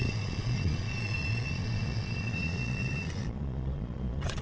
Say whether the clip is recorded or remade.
remade